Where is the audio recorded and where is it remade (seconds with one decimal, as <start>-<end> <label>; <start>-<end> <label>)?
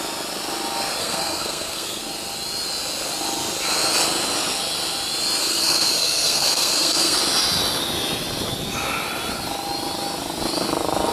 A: 0.0-1.0 recorded; 1.0-2.0 remade; 2.0-5.4 recorded; 5.4-7.2 remade; 7.2-11.1 recorded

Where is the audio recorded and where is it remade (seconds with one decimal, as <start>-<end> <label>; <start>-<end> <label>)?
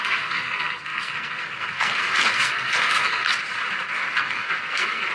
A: 0.0-3.3 remade; 3.3-3.9 recorded; 3.9-5.1 remade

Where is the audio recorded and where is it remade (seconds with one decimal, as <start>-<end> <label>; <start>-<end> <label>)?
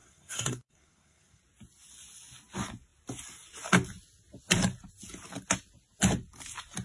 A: 0.0-1.4 remade; 1.4-6.8 recorded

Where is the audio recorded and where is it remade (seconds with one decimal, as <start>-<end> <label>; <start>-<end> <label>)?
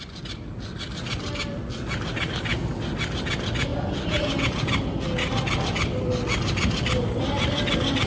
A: 0.0-8.1 recorded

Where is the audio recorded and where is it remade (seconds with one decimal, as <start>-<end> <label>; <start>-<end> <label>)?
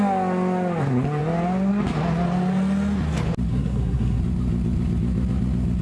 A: 0.0-3.5 recorded; 3.5-4.2 remade; 4.2-5.8 recorded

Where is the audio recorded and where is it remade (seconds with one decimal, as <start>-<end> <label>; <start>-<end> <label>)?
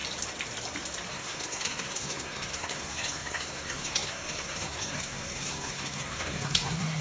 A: 0.0-1.1 recorded; 1.1-7.0 remade